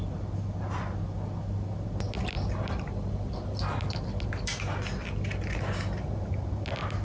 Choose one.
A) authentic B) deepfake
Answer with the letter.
A